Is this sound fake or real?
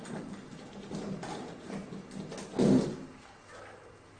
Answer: real